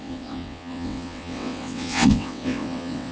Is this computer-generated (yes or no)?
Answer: yes